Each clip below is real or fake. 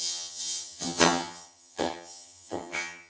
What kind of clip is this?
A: fake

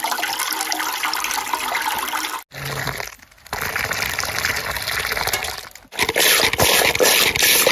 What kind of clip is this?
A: real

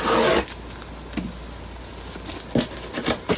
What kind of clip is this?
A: real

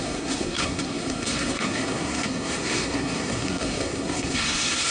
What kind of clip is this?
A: fake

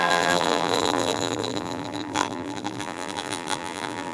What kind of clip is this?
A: fake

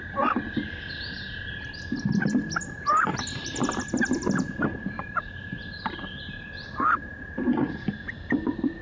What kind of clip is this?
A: real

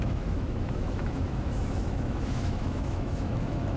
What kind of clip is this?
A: fake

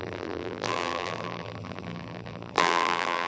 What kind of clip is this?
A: fake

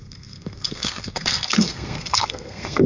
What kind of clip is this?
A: fake